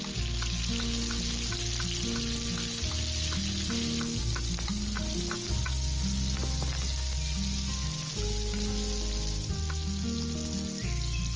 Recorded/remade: recorded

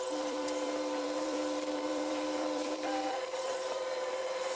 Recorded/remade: remade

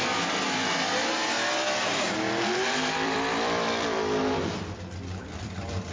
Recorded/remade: remade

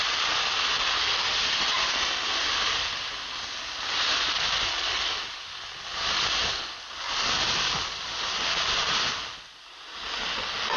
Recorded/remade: recorded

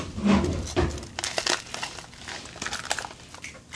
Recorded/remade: recorded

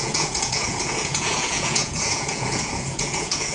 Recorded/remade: remade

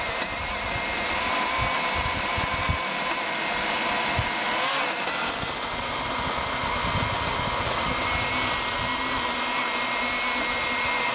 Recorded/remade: recorded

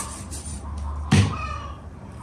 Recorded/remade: remade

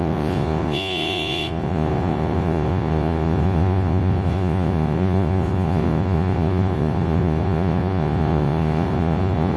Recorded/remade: remade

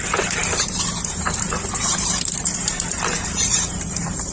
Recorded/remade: remade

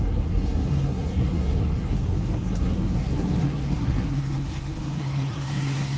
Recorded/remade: remade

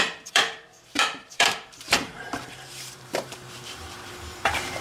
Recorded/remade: remade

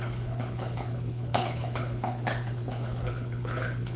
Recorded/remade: remade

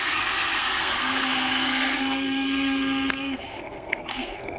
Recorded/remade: remade